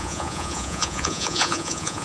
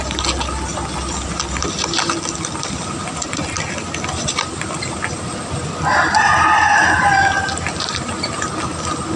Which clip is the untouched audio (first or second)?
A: second